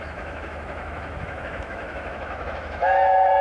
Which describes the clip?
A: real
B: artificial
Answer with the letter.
B